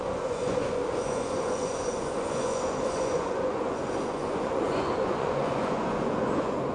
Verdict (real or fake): fake